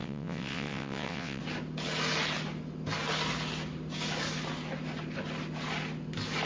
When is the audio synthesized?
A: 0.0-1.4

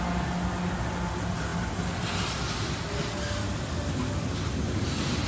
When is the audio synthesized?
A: none

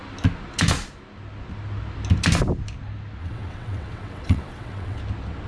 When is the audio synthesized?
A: 3.2-5.0

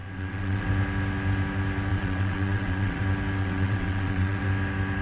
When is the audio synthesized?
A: 0.0-0.7; 1.9-3.0; 3.4-4.4

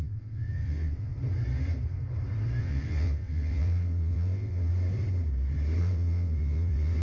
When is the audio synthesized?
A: 0.0-1.1; 2.6-4.7; 5.8-7.0